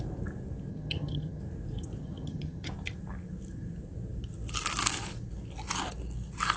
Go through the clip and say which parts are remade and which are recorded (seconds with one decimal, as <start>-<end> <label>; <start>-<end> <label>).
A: 0.0-0.7 recorded; 0.7-1.4 remade; 1.4-2.0 recorded; 2.0-2.7 remade; 2.7-6.6 recorded